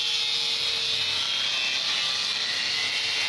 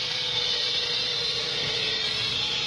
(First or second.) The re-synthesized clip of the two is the second